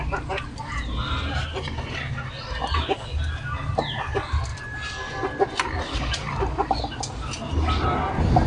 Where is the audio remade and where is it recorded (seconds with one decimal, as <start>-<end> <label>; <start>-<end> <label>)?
0.0-4.5 recorded; 4.5-6.8 remade; 6.8-8.5 recorded